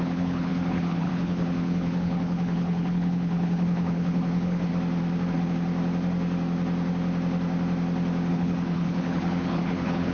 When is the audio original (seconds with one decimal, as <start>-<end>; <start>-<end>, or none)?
4.7-8.3